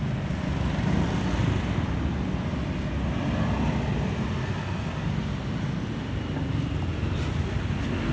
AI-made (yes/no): no